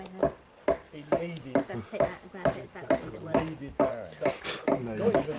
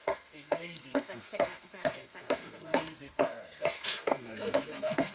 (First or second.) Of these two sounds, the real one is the first